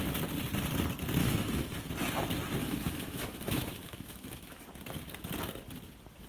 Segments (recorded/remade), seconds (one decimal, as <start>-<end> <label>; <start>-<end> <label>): 0.0-1.2 recorded; 1.2-1.9 remade; 1.9-2.6 recorded; 2.6-4.6 remade; 4.6-6.3 recorded